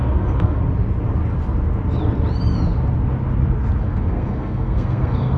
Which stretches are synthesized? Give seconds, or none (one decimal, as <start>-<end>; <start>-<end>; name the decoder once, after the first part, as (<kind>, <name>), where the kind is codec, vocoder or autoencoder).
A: 0.0-0.6 (codec, SNAC); 3.8-5.4